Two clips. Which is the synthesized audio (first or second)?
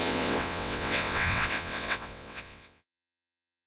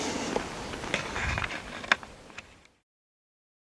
first